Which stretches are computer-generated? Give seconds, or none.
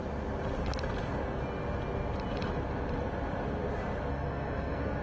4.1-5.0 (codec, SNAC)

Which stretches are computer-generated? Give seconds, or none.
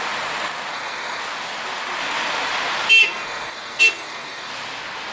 0.7-1.2 (codec, SNAC); 3.0-4.5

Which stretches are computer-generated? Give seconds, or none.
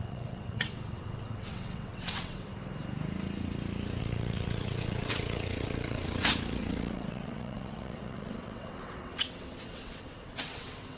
0.0-2.5 (vocoder, WaveNeXt); 4.0-11.0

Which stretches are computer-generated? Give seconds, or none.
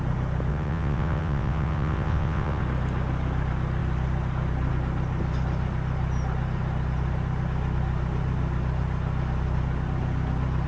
0.5-2.6 (vocoder, WaveNeXt)